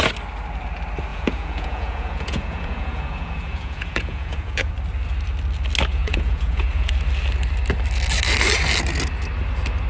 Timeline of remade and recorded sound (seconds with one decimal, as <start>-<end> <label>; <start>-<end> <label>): 0.0-1.1 recorded; 1.1-4.7 remade; 4.7-5.9 recorded; 5.9-6.9 remade; 6.9-9.9 recorded